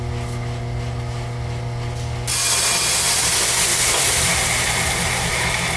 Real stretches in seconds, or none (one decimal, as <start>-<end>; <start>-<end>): 0.0-3.7